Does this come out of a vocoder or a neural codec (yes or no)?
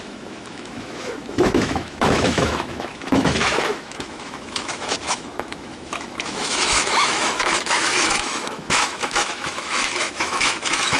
yes